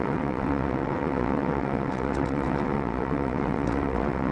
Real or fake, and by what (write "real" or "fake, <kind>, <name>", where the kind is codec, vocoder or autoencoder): fake, vocoder, WaveNeXt